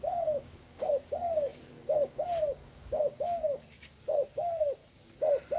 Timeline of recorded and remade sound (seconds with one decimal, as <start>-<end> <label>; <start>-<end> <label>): 0.0-4.8 remade; 4.8-5.6 recorded